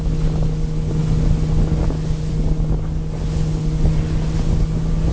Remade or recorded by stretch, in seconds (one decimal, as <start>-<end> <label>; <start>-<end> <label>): 0.0-5.1 recorded